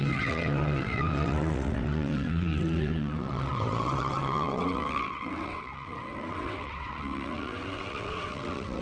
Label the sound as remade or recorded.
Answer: remade